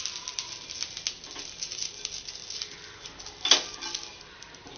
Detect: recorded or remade recorded